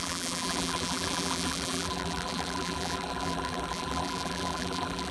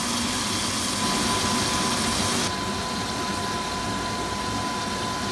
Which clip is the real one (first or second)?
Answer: second